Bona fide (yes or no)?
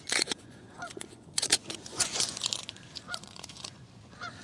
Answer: no